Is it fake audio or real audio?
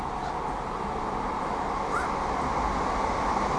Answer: real